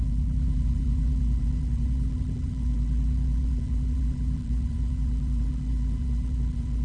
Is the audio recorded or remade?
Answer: remade